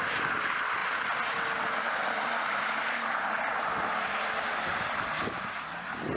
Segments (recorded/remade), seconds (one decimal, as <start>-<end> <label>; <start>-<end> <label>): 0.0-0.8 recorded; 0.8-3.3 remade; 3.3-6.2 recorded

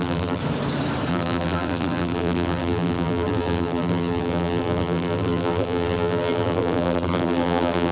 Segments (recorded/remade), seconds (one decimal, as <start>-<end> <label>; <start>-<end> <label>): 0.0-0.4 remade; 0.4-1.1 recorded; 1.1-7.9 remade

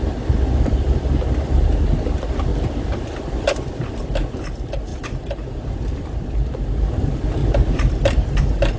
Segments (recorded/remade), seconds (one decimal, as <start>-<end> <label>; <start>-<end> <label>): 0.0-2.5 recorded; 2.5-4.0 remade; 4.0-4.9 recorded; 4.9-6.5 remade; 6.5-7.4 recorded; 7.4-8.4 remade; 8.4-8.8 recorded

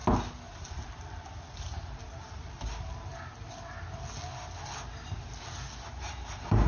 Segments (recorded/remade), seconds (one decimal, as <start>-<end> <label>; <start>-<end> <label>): 0.0-0.5 recorded; 0.5-3.1 remade; 3.1-5.9 recorded; 5.9-6.7 remade

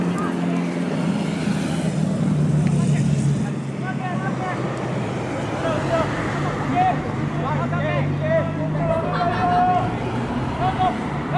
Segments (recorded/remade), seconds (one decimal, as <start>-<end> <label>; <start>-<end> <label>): 0.0-11.4 recorded

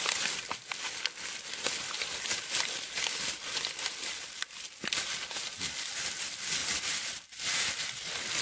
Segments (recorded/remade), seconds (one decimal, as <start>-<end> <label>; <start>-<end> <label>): 0.0-8.4 recorded